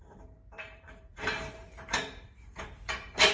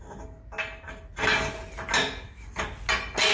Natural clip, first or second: second